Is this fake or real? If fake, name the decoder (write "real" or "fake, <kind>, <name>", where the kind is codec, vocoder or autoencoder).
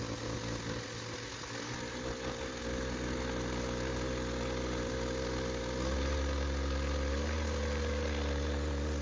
real